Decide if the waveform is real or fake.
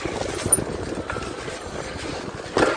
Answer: real